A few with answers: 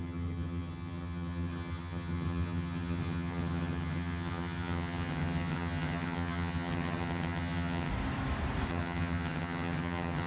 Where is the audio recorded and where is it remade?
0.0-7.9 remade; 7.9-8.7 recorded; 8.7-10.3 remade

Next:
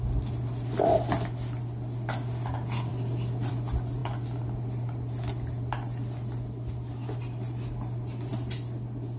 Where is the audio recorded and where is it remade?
0.0-2.9 recorded; 2.9-3.5 remade; 3.5-4.0 recorded; 4.0-6.7 remade; 6.7-9.2 recorded

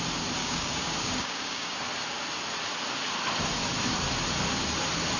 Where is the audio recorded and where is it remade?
0.0-0.4 recorded; 0.4-1.8 remade; 1.8-5.2 recorded

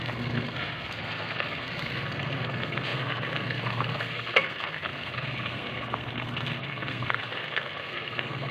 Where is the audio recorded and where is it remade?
0.0-8.5 remade

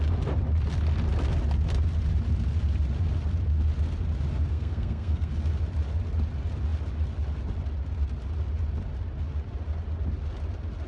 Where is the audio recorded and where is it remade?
0.0-4.5 recorded; 4.5-5.3 remade; 5.3-10.9 recorded

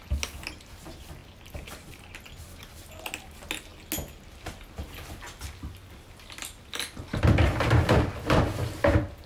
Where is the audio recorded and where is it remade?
0.0-9.3 recorded